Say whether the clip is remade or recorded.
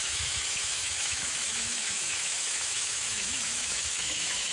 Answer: remade